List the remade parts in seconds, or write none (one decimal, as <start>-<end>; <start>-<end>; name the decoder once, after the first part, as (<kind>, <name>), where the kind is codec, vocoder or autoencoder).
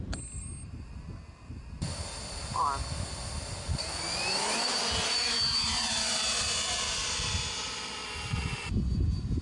none